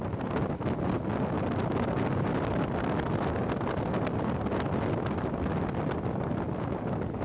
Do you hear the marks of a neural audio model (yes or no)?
no